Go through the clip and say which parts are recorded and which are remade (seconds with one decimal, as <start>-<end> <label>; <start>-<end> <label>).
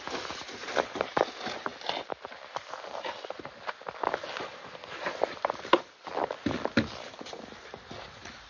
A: 0.0-0.6 recorded; 0.6-1.2 remade; 1.2-8.5 recorded